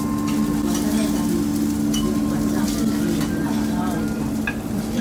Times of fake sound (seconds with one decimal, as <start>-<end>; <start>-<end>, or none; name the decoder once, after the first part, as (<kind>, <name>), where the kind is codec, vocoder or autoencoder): none